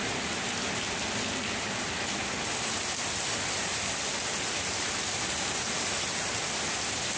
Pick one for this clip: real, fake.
real